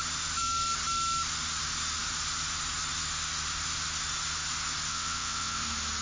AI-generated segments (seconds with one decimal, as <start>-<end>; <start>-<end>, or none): 4.9-5.6